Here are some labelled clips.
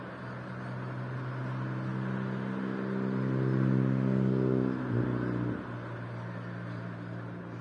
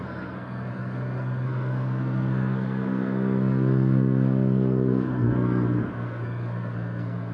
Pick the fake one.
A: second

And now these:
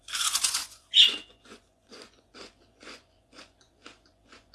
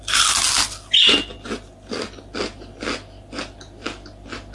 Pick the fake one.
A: first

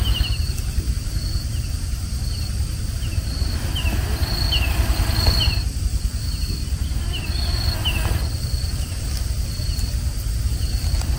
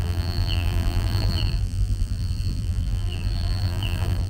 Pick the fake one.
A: second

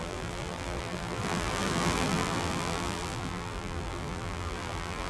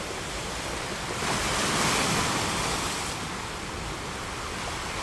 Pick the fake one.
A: first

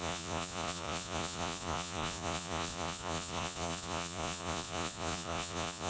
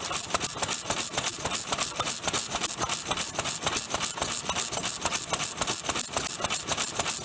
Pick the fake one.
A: first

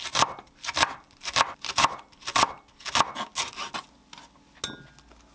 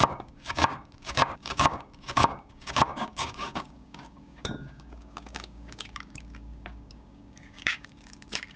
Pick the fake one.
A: second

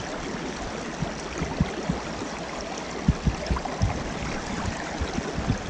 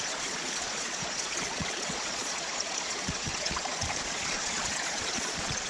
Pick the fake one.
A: second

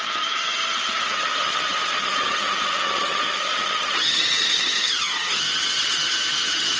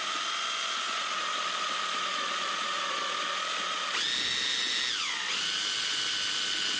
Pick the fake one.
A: first